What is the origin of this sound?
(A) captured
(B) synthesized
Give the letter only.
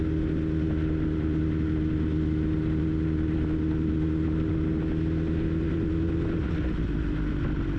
A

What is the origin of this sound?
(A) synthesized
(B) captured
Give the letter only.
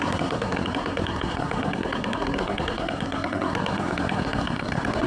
A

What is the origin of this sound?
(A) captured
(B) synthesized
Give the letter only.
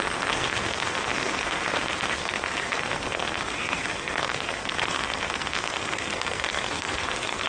B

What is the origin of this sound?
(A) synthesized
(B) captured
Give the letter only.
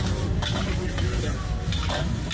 B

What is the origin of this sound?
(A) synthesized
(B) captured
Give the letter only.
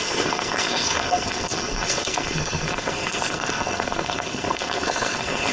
A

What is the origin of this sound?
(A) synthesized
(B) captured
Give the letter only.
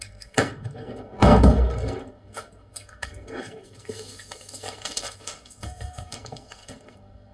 A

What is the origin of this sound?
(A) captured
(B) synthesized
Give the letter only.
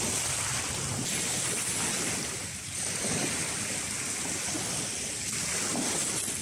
A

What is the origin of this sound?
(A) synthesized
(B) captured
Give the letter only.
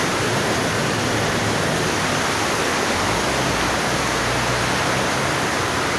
B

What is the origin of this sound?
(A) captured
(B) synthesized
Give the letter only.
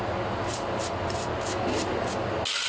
A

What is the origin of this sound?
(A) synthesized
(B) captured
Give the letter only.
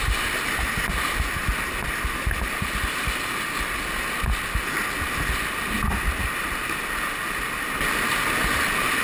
B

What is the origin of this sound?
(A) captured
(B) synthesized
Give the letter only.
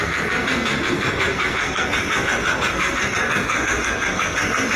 B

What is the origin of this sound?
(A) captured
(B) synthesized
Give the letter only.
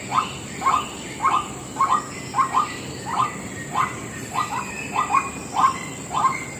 A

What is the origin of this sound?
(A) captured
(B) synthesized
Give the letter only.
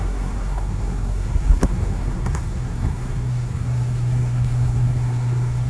B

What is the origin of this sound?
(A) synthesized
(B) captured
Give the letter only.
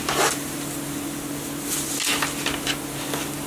B